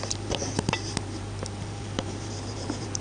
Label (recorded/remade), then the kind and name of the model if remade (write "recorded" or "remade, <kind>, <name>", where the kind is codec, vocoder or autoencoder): remade, vocoder, BigVGAN v2